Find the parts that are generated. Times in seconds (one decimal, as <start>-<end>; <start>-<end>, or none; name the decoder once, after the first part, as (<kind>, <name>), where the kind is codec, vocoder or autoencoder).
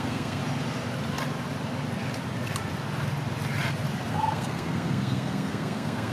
0.0-0.4 (codec, SNAC); 4.1-6.1